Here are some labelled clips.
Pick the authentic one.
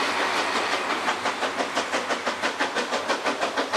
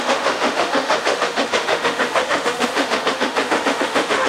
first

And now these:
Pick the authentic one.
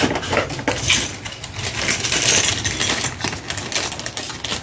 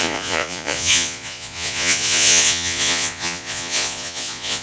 first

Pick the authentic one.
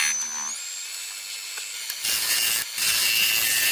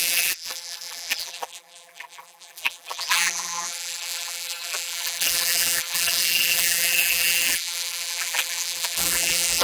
first